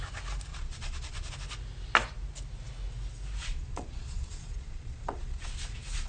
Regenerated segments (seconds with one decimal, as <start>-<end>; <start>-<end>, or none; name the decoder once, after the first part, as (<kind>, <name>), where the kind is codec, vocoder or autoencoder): 0.5-1.3 (vocoder, Vocos); 3.4-6.1